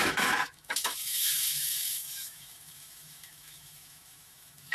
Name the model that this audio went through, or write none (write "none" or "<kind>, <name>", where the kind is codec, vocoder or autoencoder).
autoencoder, DAC-VAE